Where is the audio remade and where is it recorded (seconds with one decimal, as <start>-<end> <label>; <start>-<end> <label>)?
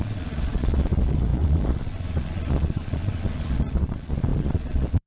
0.0-5.1 remade